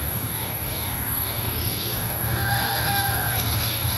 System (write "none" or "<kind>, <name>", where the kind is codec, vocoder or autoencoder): codec, DAC